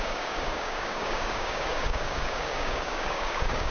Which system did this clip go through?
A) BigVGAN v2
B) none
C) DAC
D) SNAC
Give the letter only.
C